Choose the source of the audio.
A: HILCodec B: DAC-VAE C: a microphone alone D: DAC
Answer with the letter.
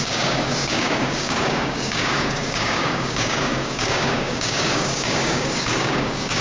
D